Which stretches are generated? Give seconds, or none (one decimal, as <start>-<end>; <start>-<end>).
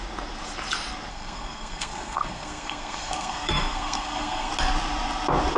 1.1-4.5